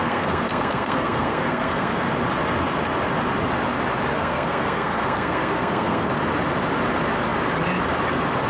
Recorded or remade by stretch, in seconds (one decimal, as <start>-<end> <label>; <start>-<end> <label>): 0.0-2.1 remade; 2.1-4.1 recorded; 4.1-6.1 remade; 6.1-8.5 recorded